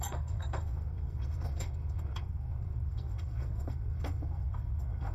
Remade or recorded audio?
remade